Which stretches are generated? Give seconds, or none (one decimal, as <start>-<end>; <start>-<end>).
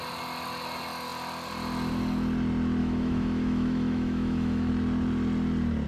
2.8-4.7